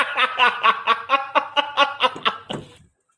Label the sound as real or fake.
real